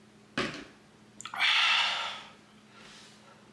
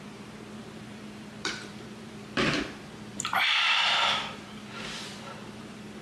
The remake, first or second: second